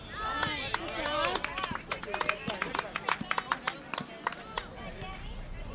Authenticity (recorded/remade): recorded